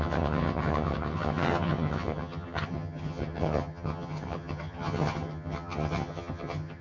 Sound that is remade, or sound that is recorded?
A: remade